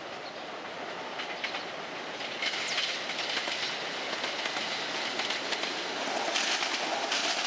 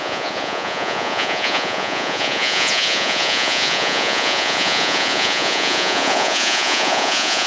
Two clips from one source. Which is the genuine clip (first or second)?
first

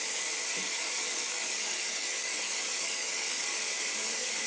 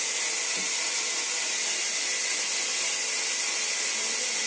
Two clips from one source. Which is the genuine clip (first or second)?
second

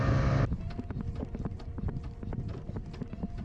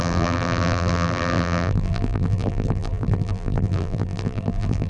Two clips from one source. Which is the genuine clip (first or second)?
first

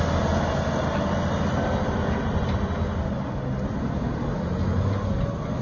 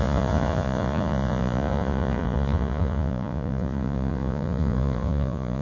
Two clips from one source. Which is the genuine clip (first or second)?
first